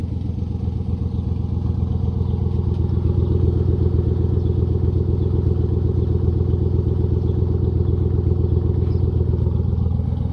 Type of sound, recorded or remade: recorded